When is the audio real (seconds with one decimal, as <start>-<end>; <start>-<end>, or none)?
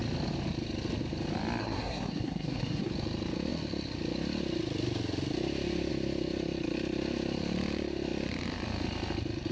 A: 0.0-1.6; 2.9-9.5